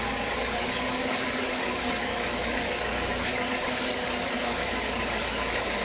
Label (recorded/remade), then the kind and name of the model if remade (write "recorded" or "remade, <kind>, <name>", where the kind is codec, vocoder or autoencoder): remade, codec, DAC